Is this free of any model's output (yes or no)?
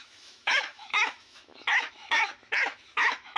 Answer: no